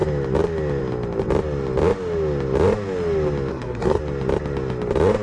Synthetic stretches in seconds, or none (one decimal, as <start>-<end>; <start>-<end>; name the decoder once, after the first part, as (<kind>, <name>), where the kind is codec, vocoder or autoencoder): 3.5-4.0 (codec, SNAC)